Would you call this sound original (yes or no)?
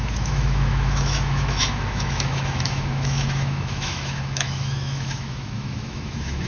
no